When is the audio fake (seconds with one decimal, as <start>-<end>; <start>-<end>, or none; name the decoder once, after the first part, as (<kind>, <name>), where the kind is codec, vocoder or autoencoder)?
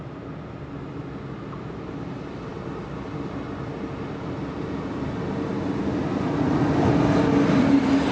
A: none